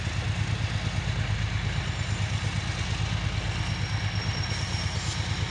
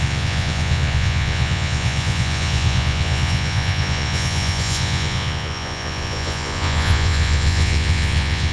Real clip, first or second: first